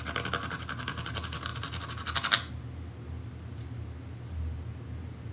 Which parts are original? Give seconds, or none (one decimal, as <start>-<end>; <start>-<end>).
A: 0.0-5.3